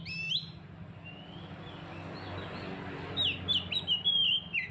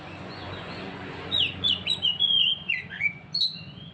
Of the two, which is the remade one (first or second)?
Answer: second